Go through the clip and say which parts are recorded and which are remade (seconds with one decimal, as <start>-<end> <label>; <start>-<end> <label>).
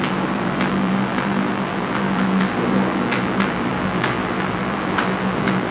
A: 0.0-5.7 remade